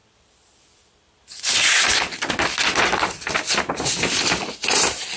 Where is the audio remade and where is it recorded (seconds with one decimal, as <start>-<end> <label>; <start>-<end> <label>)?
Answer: 0.0-2.3 remade; 2.3-5.2 recorded

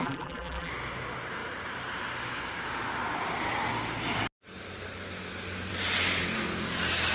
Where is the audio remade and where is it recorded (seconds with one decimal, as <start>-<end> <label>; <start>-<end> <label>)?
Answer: 0.0-0.7 remade; 0.7-7.1 recorded

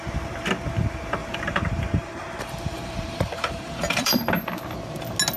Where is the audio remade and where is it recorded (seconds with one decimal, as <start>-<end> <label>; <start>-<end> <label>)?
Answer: 0.0-1.2 recorded; 1.2-4.3 remade; 4.3-5.4 recorded

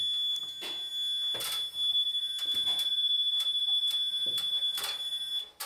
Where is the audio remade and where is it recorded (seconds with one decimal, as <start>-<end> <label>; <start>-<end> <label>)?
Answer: 0.0-1.9 recorded; 1.9-5.3 remade; 5.3-5.7 recorded

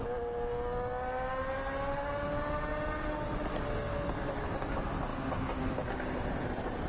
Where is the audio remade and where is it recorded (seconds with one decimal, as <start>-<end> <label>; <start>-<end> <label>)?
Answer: 0.0-6.9 recorded

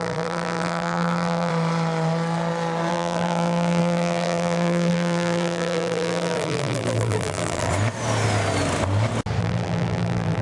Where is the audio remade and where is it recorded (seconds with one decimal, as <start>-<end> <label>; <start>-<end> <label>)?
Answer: 0.0-1.5 remade; 1.5-2.9 recorded; 2.9-7.7 remade; 7.7-9.4 recorded; 9.4-10.4 remade

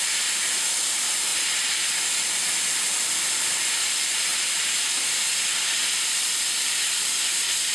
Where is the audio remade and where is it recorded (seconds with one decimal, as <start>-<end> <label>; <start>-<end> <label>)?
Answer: 0.0-1.3 remade; 1.3-2.7 recorded; 2.7-7.7 remade